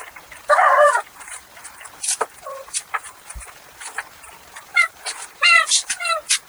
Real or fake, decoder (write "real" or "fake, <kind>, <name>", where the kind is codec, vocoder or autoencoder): fake, vocoder, BigVGAN v2